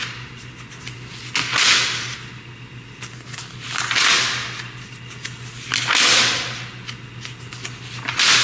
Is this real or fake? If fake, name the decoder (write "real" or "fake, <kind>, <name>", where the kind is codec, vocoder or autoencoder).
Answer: real